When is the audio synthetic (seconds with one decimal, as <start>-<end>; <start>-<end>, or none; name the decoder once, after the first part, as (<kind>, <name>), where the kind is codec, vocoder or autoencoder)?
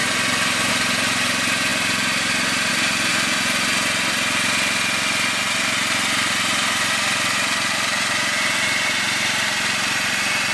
none